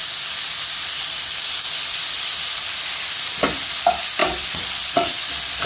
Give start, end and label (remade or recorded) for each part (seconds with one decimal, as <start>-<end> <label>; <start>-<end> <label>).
0.0-4.2 recorded; 4.2-5.3 remade; 5.3-5.7 recorded